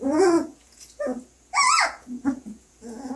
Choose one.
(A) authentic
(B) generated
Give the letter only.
B